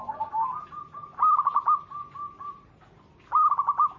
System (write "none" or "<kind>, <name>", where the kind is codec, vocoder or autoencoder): none